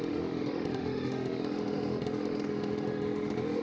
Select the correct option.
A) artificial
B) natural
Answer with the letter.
A